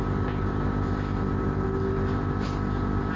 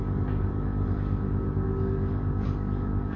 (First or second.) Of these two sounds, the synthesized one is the second